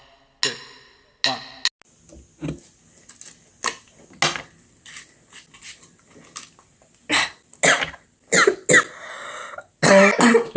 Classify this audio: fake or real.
real